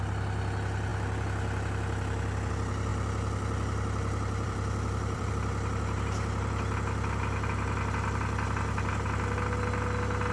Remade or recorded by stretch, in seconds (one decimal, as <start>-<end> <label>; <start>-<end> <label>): 0.0-2.9 recorded; 2.9-5.3 remade; 5.3-10.3 recorded